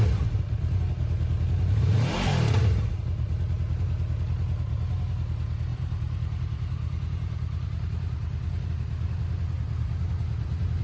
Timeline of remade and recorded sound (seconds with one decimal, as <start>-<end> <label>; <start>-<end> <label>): 0.0-5.7 recorded; 5.7-8.7 remade; 8.7-10.8 recorded